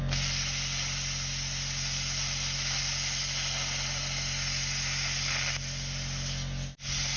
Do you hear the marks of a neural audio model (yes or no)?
no